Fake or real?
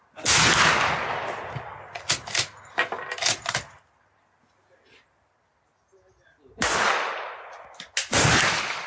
real